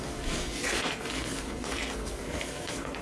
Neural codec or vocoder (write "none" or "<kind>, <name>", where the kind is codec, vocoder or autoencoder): codec, SNAC